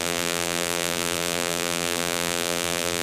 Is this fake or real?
fake